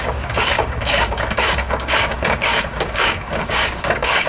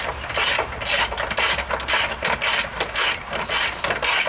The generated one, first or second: first